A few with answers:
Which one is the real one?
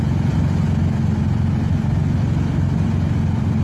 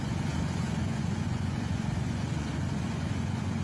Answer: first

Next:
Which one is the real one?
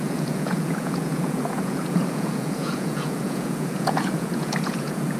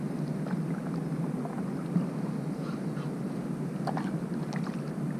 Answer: second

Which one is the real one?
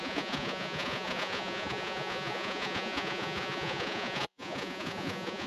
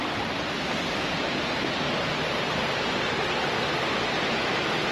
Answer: second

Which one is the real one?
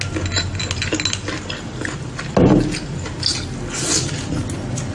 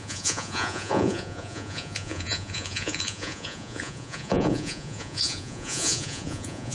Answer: first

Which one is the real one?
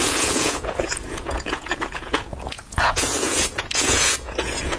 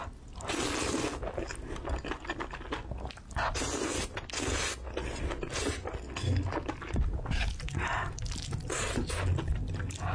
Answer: second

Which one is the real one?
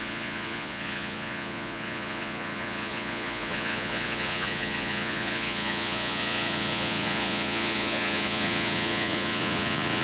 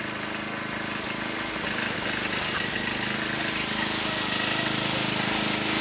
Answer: second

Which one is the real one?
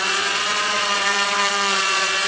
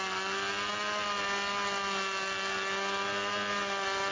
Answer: second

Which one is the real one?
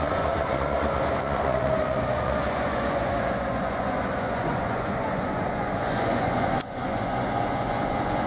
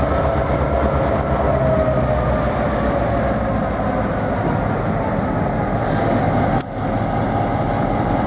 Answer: second